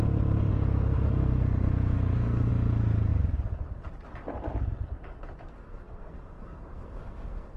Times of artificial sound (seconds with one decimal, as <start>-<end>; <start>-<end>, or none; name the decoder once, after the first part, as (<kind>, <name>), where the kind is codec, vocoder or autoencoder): 0.5-2.5 (codec, SNAC); 5.5-7.6